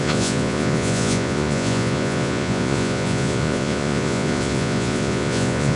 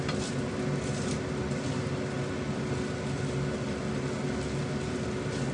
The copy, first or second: first